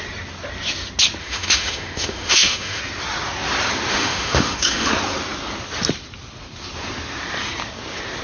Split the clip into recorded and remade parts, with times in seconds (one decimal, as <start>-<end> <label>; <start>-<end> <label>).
0.0-1.2 recorded; 1.2-2.8 remade; 2.8-3.9 recorded; 3.9-4.9 remade; 4.9-8.2 recorded